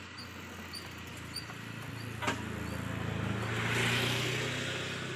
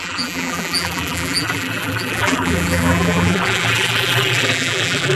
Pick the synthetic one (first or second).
second